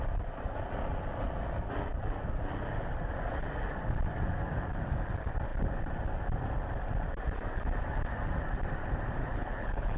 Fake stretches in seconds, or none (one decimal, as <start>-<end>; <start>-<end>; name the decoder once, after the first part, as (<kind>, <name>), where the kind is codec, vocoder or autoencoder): 9.2-10.0 (codec, HILCodec)